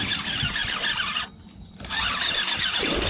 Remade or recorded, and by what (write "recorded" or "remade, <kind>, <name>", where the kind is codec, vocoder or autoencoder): recorded